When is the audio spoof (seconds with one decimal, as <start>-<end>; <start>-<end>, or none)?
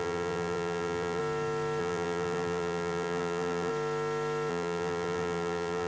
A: 0.0-1.2; 1.8-3.7; 4.5-5.9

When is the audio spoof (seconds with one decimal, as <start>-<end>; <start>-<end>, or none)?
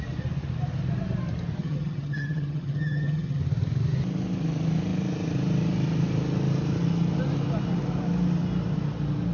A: 1.6-3.4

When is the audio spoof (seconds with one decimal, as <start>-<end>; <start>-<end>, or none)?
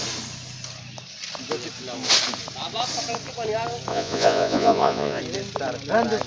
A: 3.9-5.2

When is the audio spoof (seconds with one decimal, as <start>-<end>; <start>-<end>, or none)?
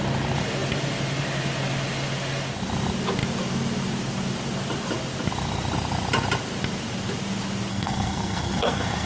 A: 7.7-9.1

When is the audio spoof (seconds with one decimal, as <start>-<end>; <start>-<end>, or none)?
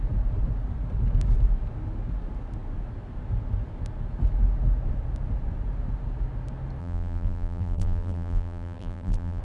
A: 6.8-9.4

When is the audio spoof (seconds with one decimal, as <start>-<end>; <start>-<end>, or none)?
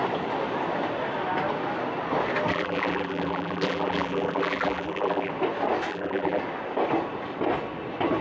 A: 2.5-5.3; 5.9-6.4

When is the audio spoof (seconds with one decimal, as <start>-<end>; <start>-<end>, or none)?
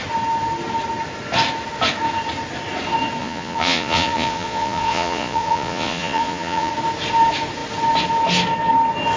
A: 3.2-6.7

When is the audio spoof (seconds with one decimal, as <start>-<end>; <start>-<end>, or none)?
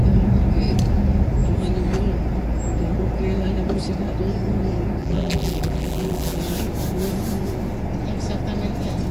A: 5.0-6.4